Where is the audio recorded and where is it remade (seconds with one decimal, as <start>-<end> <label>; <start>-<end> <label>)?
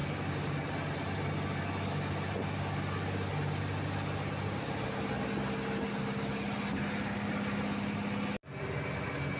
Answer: 0.0-9.4 recorded